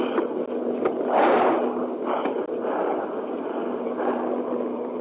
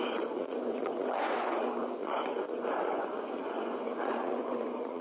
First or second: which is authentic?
first